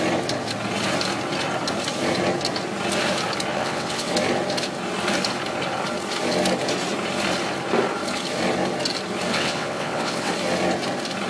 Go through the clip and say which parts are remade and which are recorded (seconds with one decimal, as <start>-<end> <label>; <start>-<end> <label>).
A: 0.0-3.5 recorded; 3.5-4.1 remade; 4.1-9.3 recorded; 9.3-10.3 remade; 10.3-11.3 recorded

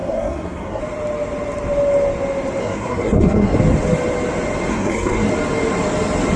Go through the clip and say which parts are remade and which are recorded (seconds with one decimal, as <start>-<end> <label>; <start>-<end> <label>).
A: 0.0-0.8 remade; 0.8-2.6 recorded; 2.6-3.6 remade; 3.6-4.7 recorded; 4.7-5.3 remade; 5.3-6.4 recorded

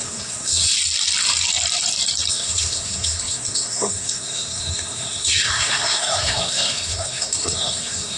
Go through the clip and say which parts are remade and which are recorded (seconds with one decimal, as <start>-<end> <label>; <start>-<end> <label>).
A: 0.0-0.6 remade; 0.6-2.3 recorded; 2.3-8.2 remade

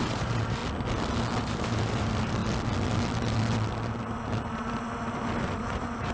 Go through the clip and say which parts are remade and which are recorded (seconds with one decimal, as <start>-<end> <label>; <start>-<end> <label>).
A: 0.0-0.6 remade; 0.6-1.4 recorded; 1.4-2.4 remade; 2.4-5.6 recorded; 5.6-6.1 remade